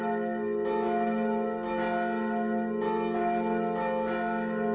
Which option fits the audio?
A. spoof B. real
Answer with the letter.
B